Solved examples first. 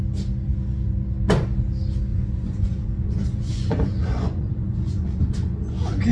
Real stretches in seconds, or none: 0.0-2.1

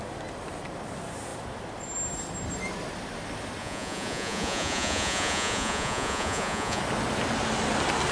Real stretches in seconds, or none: 0.0-3.6; 6.8-8.1

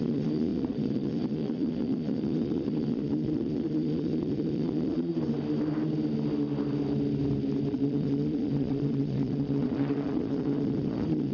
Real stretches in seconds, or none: 5.1-7.7

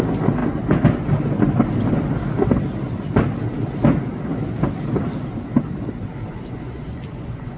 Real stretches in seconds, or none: 0.0-6.3

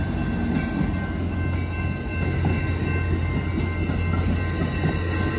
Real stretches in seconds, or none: 0.0-5.4

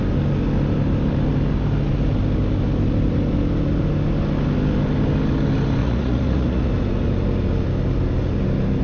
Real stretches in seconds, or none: 0.0-5.8; 6.7-8.8